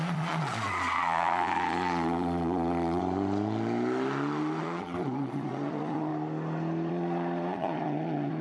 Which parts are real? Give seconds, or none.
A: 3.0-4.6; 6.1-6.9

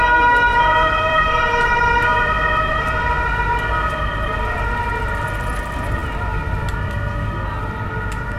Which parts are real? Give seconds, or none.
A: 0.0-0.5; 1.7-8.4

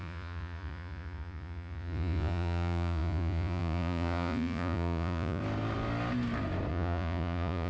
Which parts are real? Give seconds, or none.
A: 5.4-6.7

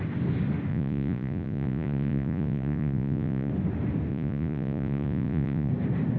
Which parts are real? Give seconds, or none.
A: 0.0-0.7; 3.5-4.1; 5.7-6.2

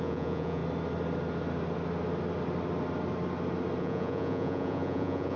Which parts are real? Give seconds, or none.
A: 0.6-3.8